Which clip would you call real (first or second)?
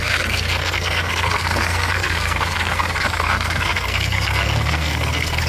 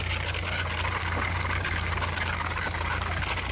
second